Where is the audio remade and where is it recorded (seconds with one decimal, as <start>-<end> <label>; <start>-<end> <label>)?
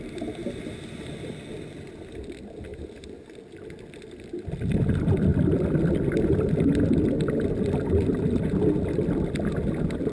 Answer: 0.0-2.7 recorded; 2.7-3.3 remade; 3.3-10.1 recorded